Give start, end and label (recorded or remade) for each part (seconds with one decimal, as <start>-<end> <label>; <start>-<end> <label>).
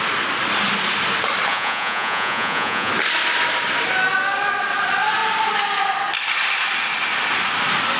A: 0.0-1.5 recorded; 1.5-2.9 remade; 2.9-8.0 recorded